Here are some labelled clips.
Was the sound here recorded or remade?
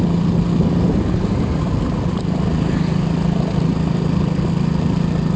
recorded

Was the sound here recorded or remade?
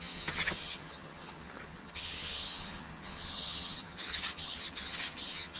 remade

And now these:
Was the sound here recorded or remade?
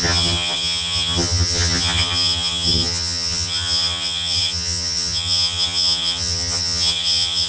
remade